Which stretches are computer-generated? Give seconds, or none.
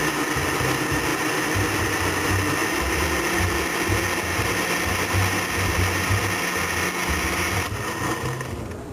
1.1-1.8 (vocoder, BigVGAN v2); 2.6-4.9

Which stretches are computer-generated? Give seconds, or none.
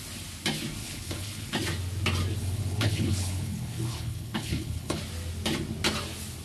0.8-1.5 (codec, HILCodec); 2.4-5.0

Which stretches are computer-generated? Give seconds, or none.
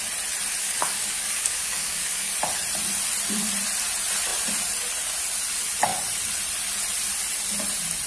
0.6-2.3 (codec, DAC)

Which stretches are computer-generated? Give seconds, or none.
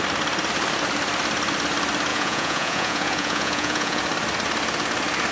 2.1-4.0 (vocoder, Vocos)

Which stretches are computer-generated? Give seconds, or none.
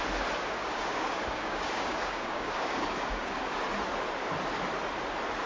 0.4-3.4 (codec, DAC)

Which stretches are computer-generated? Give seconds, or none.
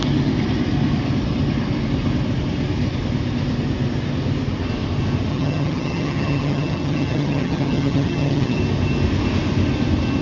5.3-8.6 (vocoder, HiFi-GAN)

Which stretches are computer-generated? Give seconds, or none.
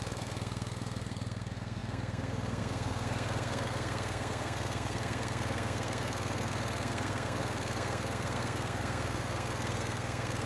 0.0-10.5 (codec, SNAC)